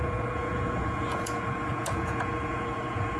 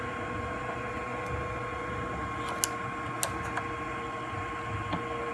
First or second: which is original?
second